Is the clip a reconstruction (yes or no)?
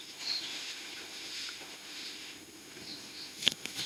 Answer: yes